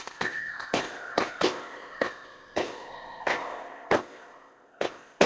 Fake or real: fake